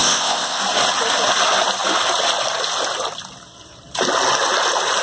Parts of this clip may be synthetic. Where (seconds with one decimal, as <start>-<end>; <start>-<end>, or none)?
0.0-0.6

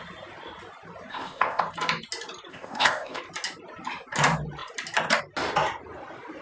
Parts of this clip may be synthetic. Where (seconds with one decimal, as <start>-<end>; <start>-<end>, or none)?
1.1-1.6; 2.5-3.2

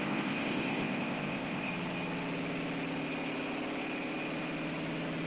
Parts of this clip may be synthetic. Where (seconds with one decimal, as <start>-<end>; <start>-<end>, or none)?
0.0-1.7

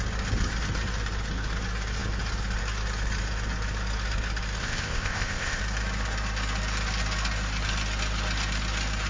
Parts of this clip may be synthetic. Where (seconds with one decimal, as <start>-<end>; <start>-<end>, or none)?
4.6-5.6

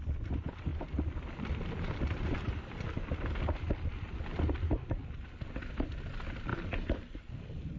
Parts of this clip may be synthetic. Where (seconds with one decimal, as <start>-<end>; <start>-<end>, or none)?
none